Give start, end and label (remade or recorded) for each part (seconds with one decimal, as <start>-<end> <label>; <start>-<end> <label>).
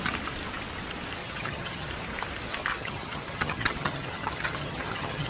0.0-1.2 recorded; 1.2-1.9 remade; 1.9-2.7 recorded; 2.7-5.3 remade